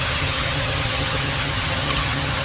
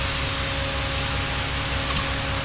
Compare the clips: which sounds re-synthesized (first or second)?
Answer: first